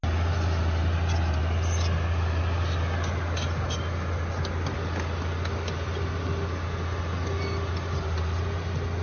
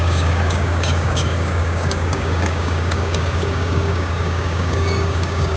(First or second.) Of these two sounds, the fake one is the second